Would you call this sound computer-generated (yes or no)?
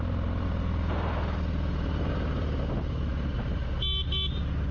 no